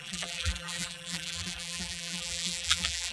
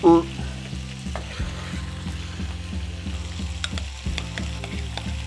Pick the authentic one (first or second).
second